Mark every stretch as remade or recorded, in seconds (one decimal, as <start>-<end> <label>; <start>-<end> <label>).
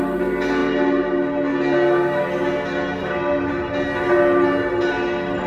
0.0-5.5 recorded